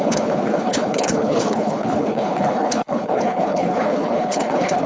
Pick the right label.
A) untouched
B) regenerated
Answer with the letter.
B